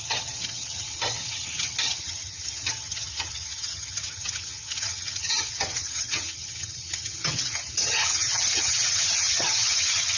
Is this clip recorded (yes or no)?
no